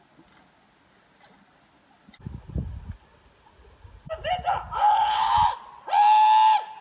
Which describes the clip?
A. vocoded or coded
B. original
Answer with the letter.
B